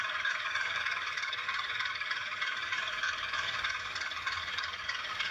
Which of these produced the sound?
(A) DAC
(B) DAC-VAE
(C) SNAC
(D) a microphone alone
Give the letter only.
A